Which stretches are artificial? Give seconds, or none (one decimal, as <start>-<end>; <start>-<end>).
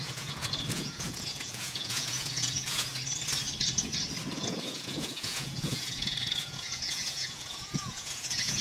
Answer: 0.0-2.9; 4.3-8.6